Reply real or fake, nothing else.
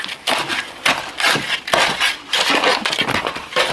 real